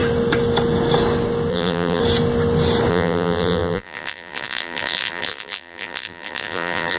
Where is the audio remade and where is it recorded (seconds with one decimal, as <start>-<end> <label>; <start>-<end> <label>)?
0.0-1.5 recorded; 1.5-2.0 remade; 2.0-2.9 recorded; 2.9-7.0 remade

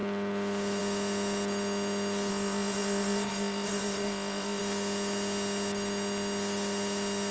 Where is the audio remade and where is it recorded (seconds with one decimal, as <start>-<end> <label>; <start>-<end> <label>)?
0.0-2.3 recorded; 2.3-4.6 remade; 4.6-7.3 recorded